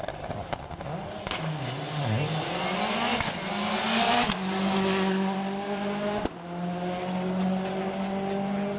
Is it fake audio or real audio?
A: real